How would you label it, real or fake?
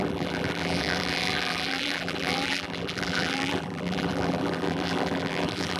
fake